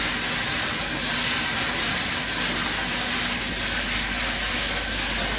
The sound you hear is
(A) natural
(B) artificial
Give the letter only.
A